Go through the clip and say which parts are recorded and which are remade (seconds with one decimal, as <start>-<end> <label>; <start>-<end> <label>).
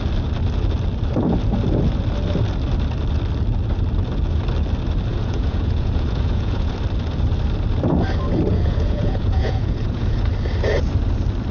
0.0-5.1 recorded; 5.1-6.7 remade; 6.7-8.5 recorded; 8.5-10.3 remade; 10.3-11.5 recorded